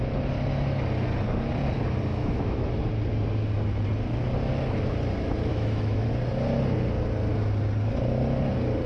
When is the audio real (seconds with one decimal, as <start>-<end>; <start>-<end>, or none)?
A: 0.0-2.1; 2.7-5.5; 6.1-8.9